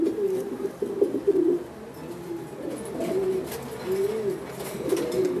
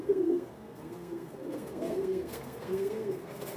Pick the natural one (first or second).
first